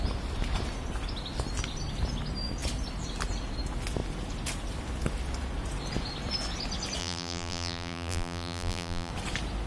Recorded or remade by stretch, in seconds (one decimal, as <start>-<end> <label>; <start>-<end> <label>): 0.0-7.0 recorded; 7.0-9.1 remade; 9.1-9.7 recorded